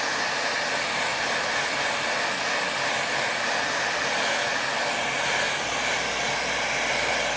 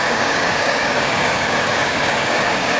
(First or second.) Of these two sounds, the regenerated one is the second